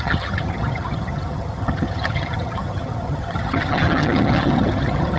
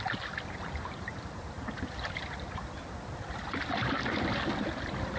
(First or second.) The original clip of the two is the second